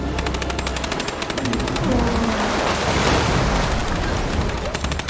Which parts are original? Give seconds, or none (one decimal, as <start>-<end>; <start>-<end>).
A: 0.0-2.1; 3.4-3.8